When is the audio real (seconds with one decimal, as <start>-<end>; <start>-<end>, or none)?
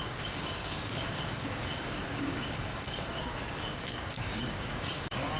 none